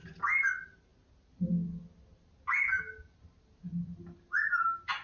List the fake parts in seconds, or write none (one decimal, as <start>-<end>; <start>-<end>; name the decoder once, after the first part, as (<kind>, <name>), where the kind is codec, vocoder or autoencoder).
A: none